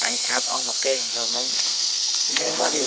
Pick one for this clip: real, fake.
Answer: fake